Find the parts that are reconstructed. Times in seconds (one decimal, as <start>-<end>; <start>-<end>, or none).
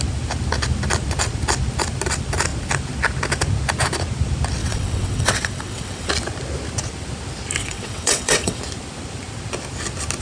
4.6-6.1; 7.6-8.6